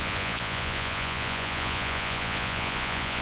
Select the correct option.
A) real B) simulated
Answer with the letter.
B